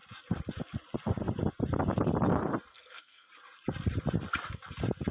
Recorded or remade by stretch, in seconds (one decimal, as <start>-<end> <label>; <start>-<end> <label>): 0.0-2.7 recorded; 2.7-3.3 remade; 3.3-5.1 recorded